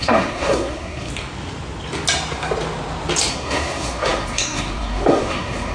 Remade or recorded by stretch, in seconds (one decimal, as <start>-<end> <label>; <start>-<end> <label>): 0.0-1.1 remade; 1.1-3.3 recorded; 3.3-5.7 remade